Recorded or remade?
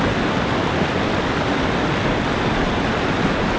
recorded